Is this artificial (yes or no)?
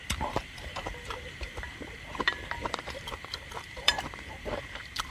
yes